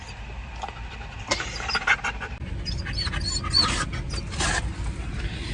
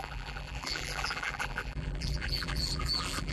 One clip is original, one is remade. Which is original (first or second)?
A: first